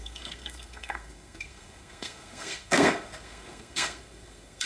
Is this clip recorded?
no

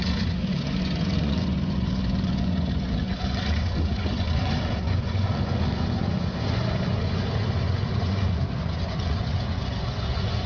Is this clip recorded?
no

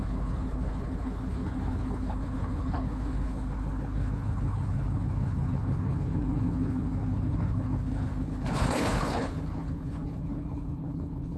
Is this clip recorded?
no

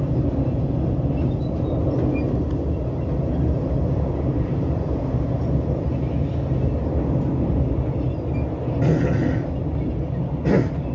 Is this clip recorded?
yes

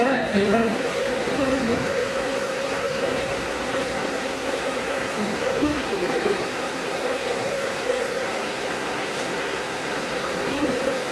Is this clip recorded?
no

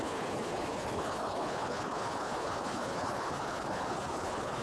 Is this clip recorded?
no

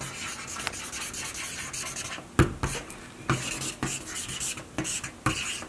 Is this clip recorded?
yes